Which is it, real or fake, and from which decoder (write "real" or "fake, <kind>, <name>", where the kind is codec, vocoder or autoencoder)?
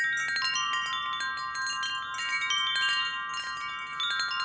real